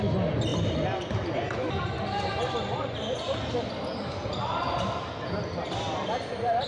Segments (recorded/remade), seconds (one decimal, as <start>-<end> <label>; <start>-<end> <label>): 0.0-6.7 recorded

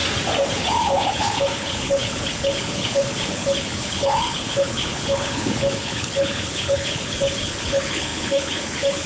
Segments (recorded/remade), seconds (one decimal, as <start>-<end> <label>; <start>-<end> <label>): 0.0-0.5 recorded; 0.5-9.1 remade

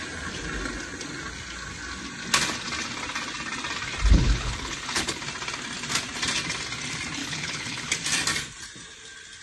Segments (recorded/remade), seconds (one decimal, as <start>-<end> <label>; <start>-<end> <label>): 0.0-4.1 recorded; 4.1-5.2 remade; 5.2-7.2 recorded; 7.2-7.9 remade; 7.9-9.4 recorded

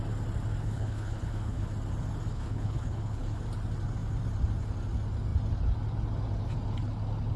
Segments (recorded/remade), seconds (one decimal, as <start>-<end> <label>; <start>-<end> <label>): 0.0-0.6 recorded; 0.6-1.7 remade; 1.7-2.3 recorded; 2.3-3.4 remade; 3.4-7.4 recorded

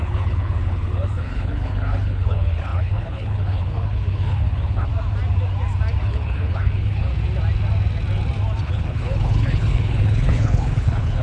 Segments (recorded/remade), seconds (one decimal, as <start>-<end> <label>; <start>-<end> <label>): 0.0-4.9 remade; 4.9-6.0 recorded; 6.0-7.1 remade; 7.1-8.6 recorded; 8.6-11.2 remade

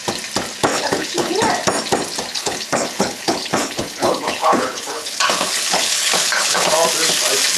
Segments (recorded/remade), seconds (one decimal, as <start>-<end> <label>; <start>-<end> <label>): 0.0-0.7 recorded; 0.7-1.3 remade; 1.3-2.3 recorded; 2.3-6.7 remade; 6.7-7.6 recorded

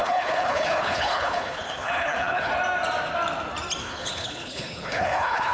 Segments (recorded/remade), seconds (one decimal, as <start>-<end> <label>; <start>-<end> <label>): 0.0-2.5 remade; 2.5-3.8 recorded; 3.8-5.5 remade